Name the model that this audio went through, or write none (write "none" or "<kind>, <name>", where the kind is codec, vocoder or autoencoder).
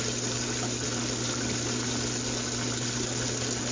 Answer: none